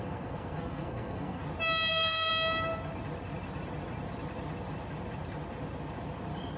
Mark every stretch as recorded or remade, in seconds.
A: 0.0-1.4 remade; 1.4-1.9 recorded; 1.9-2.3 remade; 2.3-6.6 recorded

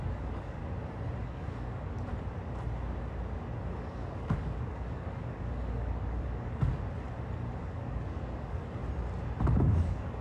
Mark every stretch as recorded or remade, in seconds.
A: 0.0-0.6 remade; 0.6-1.2 recorded; 1.2-2.1 remade; 2.1-3.6 recorded; 3.6-6.7 remade; 6.7-7.6 recorded; 7.6-8.8 remade; 8.8-9.5 recorded; 9.5-10.2 remade

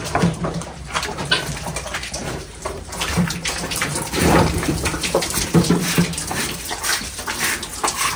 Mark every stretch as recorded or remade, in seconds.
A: 0.0-6.9 remade; 6.9-7.7 recorded; 7.7-8.2 remade

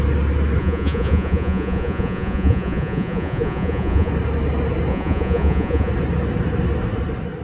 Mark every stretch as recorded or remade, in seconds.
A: 0.0-0.6 recorded; 0.6-4.1 remade; 4.1-4.9 recorded; 4.9-5.9 remade; 5.9-7.4 recorded